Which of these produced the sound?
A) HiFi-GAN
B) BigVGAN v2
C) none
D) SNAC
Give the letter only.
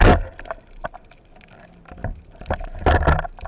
C